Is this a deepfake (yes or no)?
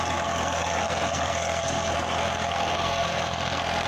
yes